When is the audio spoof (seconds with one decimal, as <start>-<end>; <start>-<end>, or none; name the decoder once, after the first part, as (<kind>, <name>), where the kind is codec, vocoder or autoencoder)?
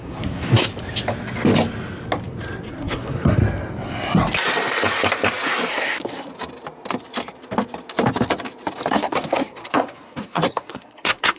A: 0.0-0.7 (codec, SNAC); 2.7-3.4; 5.7-6.3; 8.9-11.4